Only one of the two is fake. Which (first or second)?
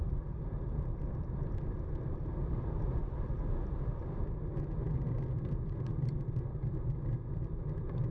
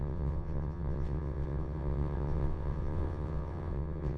second